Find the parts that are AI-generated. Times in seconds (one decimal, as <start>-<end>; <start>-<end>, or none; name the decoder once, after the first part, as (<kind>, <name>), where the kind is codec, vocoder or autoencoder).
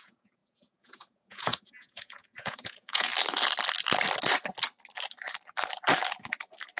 0.0-3.1 (vocoder, Vocos)